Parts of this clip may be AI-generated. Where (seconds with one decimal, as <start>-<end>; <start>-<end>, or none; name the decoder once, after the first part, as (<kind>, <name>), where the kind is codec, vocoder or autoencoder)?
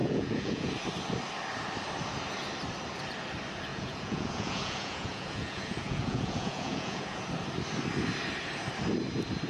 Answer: 0.0-0.7 (vocoder, Vocos); 3.7-7.2